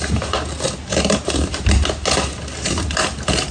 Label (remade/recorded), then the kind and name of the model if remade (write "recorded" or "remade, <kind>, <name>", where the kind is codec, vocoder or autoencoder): recorded